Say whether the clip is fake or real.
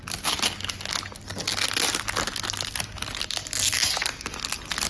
real